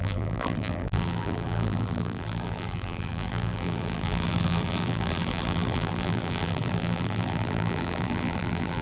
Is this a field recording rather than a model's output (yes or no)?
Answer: no